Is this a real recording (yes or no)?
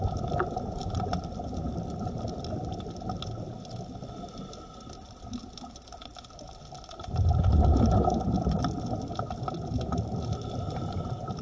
yes